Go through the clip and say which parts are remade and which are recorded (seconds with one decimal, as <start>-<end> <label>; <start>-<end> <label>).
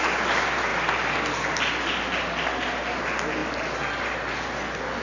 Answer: 0.0-5.0 recorded